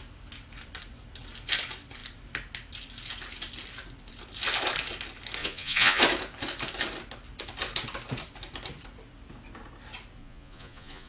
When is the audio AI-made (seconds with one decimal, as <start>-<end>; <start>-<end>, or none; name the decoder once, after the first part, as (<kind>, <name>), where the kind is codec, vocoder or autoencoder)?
5.4-6.0 (vocoder, Vocos); 10.2-11.1